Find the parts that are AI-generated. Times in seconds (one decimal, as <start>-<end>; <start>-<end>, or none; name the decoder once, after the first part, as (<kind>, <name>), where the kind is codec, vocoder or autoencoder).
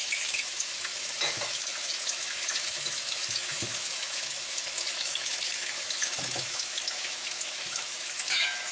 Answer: 0.0-8.7 (autoencoder, DAC-VAE)